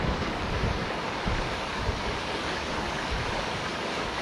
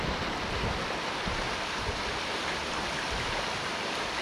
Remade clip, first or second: first